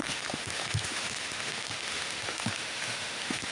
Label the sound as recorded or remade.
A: remade